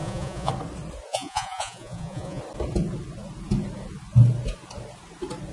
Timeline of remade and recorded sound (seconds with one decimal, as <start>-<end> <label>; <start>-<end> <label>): 0.0-0.5 remade; 0.5-1.1 recorded; 1.1-2.4 remade; 2.4-5.5 recorded